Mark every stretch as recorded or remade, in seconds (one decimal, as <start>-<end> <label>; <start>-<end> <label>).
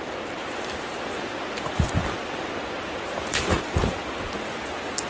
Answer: 0.0-5.1 recorded